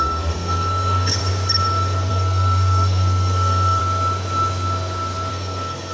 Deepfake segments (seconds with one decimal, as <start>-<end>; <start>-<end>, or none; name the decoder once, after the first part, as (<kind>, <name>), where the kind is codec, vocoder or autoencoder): 0.0-1.2 (codec, SNAC); 2.1-3.8; 5.3-5.9